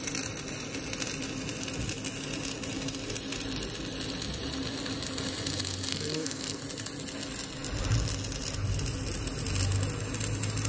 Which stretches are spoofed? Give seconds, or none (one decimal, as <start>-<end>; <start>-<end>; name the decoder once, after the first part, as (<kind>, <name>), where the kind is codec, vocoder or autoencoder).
5.9-6.6 (codec, SNAC)